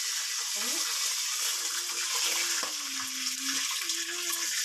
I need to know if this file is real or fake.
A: real